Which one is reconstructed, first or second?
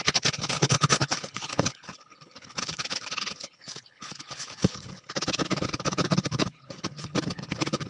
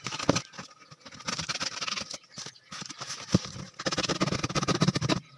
first